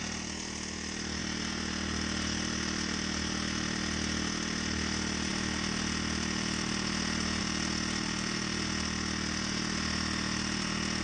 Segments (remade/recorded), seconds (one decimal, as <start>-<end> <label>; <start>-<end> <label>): 0.0-11.0 recorded